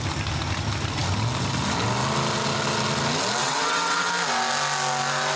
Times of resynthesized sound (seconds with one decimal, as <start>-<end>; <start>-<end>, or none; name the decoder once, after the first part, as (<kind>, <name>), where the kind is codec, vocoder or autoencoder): 3.4-4.1 (vocoder, WaveNeXt)